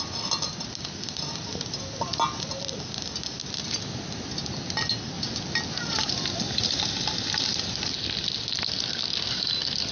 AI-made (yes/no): no